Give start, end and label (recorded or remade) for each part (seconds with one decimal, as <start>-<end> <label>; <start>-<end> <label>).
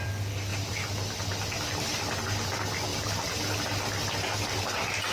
0.0-0.5 recorded; 0.5-2.0 remade; 2.0-2.9 recorded; 2.9-3.5 remade; 3.5-5.1 recorded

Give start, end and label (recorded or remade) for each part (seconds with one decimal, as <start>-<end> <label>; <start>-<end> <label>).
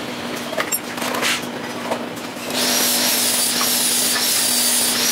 0.0-2.3 recorded; 2.3-3.1 remade; 3.1-5.1 recorded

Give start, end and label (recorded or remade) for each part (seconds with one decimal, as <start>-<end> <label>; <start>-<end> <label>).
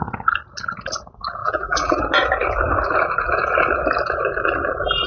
0.0-1.4 recorded; 1.4-2.0 remade; 2.0-5.1 recorded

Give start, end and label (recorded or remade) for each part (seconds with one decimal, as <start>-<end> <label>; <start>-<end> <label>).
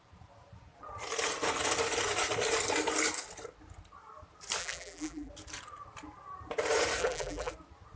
0.0-4.6 recorded; 4.6-5.3 remade; 5.3-7.0 recorded; 7.0-7.5 remade; 7.5-8.0 recorded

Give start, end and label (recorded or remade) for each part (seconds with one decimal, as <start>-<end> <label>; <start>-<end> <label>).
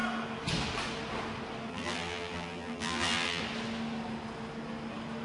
0.0-1.7 recorded; 1.7-3.4 remade; 3.4-5.2 recorded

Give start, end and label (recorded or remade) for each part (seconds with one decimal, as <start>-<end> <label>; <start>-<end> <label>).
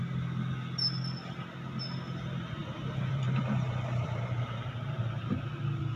0.0-2.6 recorded; 2.6-5.2 remade; 5.2-6.0 recorded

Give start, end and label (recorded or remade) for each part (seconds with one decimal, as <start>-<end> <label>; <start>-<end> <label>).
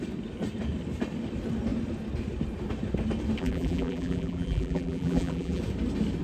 0.0-3.4 recorded; 3.4-5.6 remade; 5.6-6.2 recorded